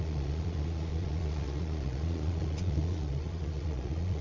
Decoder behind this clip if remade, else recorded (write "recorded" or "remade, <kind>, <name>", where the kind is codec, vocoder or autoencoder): remade, vocoder, Vocos